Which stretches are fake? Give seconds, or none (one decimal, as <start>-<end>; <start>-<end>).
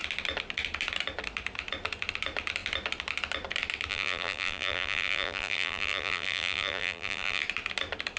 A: 3.9-7.4